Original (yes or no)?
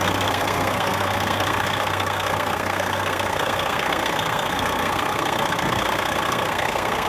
no